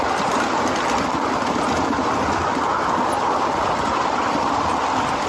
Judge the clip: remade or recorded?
recorded